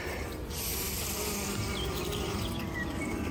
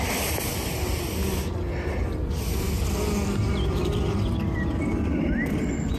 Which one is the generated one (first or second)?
first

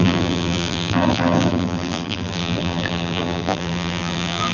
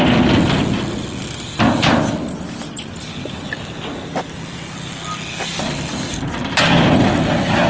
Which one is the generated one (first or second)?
first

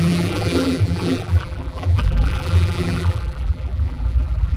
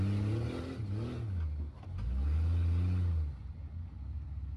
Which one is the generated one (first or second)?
first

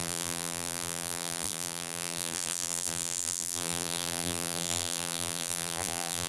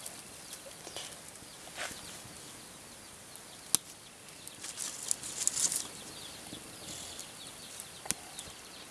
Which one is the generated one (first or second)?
first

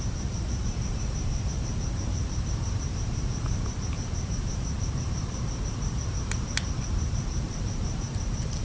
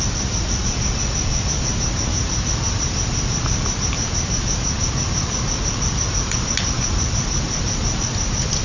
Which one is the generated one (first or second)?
first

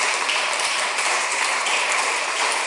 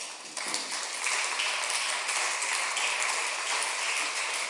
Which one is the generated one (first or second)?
first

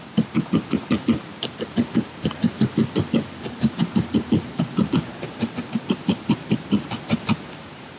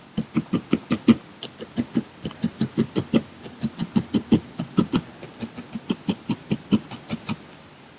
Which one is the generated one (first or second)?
first